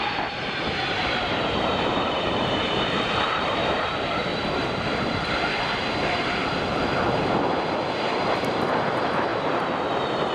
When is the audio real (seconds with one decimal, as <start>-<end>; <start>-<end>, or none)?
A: 4.3-8.3